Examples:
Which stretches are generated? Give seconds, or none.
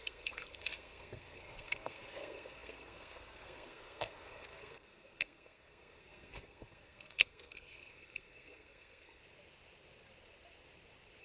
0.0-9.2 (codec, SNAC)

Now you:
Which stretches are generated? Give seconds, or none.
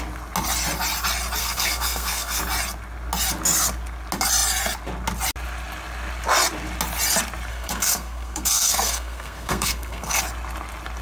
1.4-2.4 (codec, SNAC); 7.5-10.2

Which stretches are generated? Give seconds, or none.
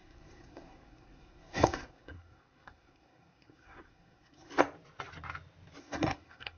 0.0-4.5 (codec, SNAC); 5.8-6.6